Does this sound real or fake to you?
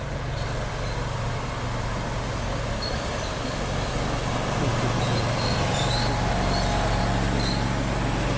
real